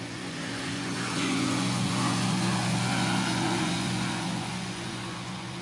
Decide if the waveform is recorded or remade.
remade